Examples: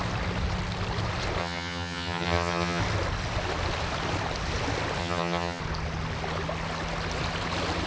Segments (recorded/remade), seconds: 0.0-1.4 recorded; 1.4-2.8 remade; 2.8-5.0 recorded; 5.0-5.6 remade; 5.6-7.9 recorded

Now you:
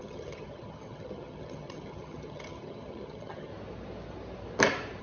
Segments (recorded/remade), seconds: 0.0-3.5 remade; 3.5-5.0 recorded